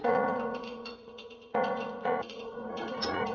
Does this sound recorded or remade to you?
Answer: remade